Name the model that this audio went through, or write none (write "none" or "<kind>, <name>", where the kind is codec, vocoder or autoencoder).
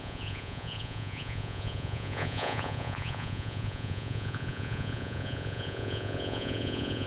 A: vocoder, Vocos